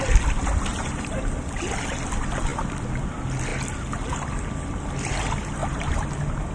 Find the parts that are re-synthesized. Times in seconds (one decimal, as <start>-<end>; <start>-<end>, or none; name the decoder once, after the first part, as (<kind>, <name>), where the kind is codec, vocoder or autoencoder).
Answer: 0.7-1.2 (vocoder, BigVGAN v2); 5.6-6.1